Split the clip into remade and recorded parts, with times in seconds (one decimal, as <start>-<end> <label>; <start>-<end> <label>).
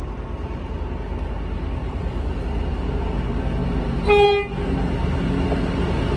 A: 0.0-1.8 recorded; 1.8-2.7 remade; 2.7-6.2 recorded